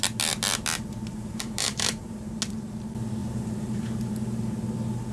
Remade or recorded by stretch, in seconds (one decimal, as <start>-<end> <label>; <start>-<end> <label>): 0.0-1.1 recorded; 1.1-2.3 remade; 2.3-3.2 recorded; 3.2-4.5 remade; 4.5-5.1 recorded